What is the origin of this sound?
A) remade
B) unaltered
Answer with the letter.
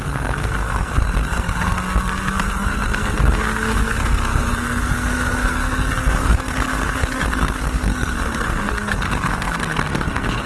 A